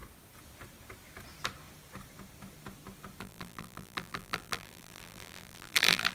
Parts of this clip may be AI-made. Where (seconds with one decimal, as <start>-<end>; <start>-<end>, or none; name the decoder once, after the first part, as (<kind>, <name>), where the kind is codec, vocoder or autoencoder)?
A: 3.2-6.1 (vocoder, BigVGAN v2)